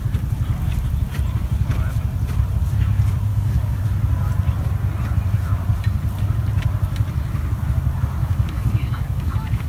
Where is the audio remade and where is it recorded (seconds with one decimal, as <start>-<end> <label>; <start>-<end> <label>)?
0.0-3.3 recorded; 3.3-3.8 remade; 3.8-8.2 recorded; 8.2-9.7 remade